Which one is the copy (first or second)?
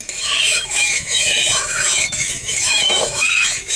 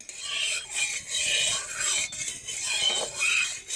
first